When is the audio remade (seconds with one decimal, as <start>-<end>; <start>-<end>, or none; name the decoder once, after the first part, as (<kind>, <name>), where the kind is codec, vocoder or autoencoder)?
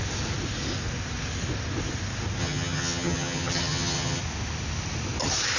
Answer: 2.4-4.2 (vocoder, HiFi-GAN)